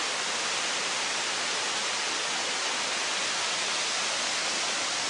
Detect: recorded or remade recorded